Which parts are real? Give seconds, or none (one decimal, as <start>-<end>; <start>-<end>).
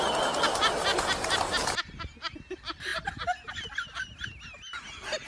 0.0-5.3